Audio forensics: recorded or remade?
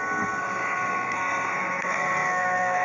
remade